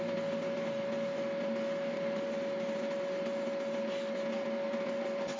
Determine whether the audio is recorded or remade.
recorded